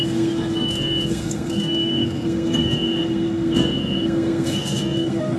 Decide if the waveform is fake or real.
fake